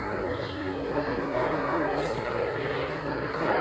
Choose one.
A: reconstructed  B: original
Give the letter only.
A